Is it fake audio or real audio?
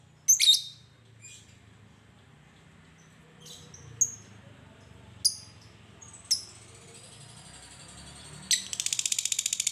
real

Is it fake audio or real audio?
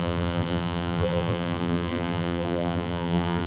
fake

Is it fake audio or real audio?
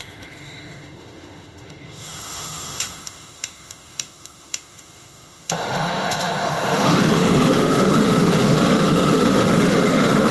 fake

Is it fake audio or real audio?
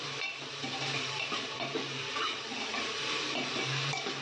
fake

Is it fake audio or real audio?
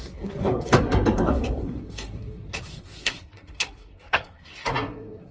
fake